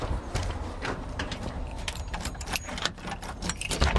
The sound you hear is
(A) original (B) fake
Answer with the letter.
B